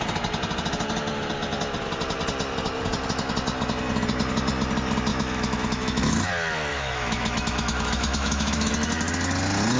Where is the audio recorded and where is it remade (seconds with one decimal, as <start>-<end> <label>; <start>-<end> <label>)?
0.0-5.1 recorded; 5.1-6.3 remade; 6.3-6.7 recorded; 6.7-8.7 remade; 8.7-9.8 recorded